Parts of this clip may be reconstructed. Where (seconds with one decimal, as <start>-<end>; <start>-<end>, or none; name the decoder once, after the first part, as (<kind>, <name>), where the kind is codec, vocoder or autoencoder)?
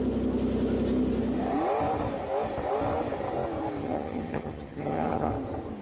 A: 3.8-5.3 (vocoder, HiFi-GAN)